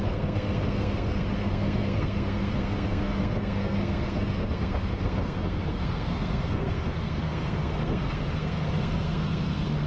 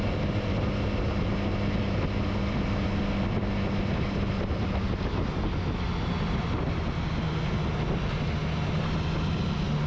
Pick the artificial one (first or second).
first